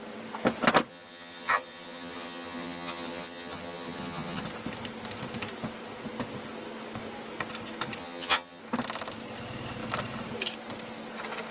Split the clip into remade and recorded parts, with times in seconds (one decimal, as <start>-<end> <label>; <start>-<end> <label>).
0.0-0.9 recorded; 0.9-4.4 remade; 4.4-8.0 recorded; 8.0-8.6 remade; 8.6-11.5 recorded